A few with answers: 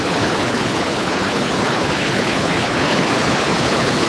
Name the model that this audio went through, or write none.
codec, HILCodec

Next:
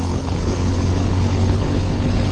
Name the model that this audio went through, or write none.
codec, HILCodec